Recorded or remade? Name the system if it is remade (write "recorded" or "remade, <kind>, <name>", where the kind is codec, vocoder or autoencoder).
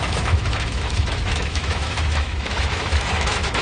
remade, autoencoder, DAC-VAE